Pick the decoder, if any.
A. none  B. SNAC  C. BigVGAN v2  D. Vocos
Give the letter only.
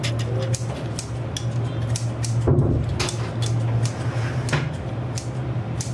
A